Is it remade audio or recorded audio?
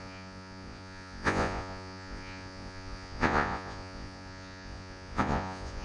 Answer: remade